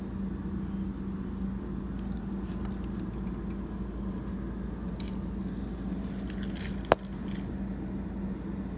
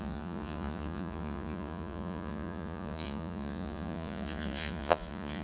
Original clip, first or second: first